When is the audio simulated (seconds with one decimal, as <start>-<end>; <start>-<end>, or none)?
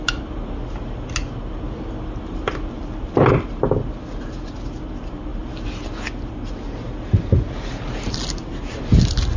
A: none